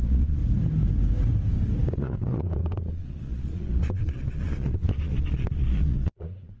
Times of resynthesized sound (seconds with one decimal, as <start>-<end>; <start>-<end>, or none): 0.0-0.4; 1.9-6.6